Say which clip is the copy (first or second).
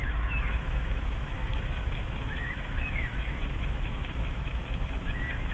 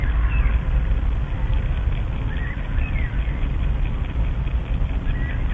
first